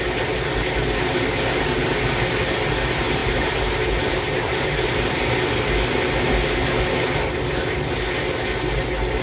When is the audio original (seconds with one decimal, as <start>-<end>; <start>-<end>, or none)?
0.0-3.2; 5.1-9.2